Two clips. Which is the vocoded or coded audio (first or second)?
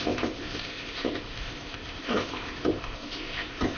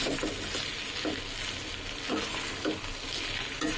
first